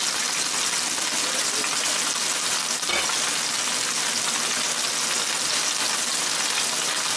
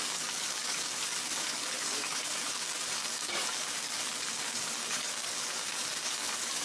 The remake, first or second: second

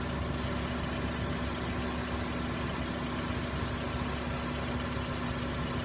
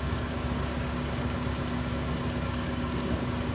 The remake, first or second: second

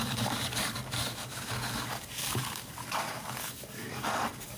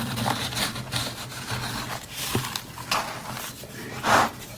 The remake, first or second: first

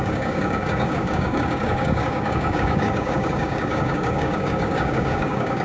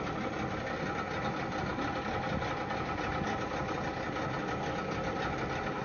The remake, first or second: first